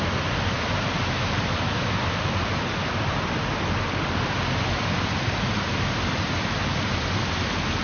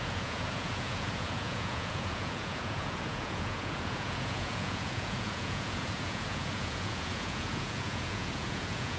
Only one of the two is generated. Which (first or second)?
second